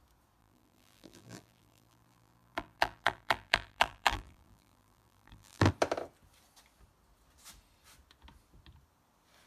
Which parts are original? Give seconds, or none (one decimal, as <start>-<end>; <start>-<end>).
0.0-0.4; 5.7-9.5